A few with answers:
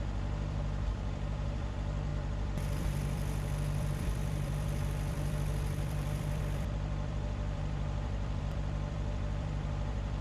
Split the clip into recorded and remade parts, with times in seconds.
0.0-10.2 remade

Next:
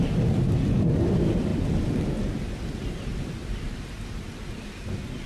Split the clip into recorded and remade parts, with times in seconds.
0.0-5.3 recorded

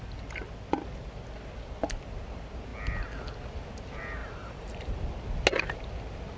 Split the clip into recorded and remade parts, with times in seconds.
0.0-4.2 recorded; 4.2-5.0 remade; 5.0-6.4 recorded

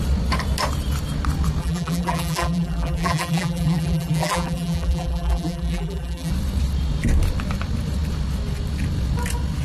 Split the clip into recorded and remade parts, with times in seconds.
0.0-1.6 recorded; 1.6-6.3 remade; 6.3-9.6 recorded

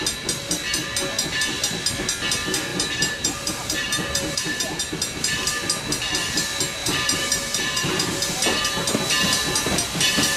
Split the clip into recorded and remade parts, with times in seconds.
0.0-2.7 recorded; 2.7-4.8 remade; 4.8-6.8 recorded; 6.8-8.3 remade; 8.3-10.4 recorded

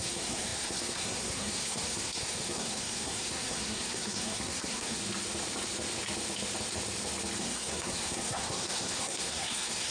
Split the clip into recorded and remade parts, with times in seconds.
0.0-5.0 remade; 5.0-7.4 recorded; 7.4-9.9 remade

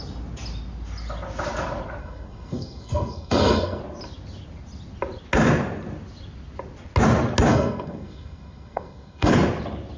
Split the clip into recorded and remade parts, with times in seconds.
0.0-2.0 recorded; 2.0-3.8 remade; 3.8-7.5 recorded; 7.5-9.3 remade; 9.3-10.0 recorded

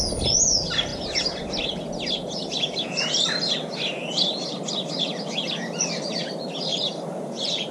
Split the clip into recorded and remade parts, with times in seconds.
0.0-6.7 recorded; 6.7-7.7 remade